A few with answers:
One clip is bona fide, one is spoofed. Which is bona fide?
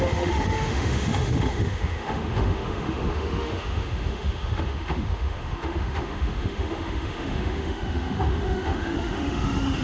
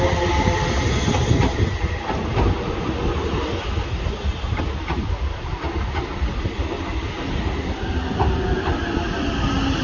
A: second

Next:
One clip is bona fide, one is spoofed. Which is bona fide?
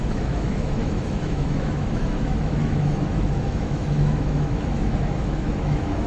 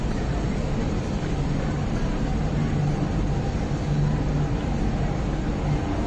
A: second